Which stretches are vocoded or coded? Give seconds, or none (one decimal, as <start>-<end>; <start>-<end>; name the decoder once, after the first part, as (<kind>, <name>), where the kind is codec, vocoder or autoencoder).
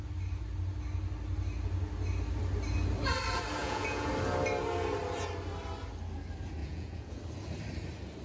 3.6-4.1 (vocoder, Vocos); 6.6-7.2